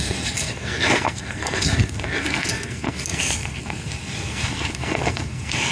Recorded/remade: remade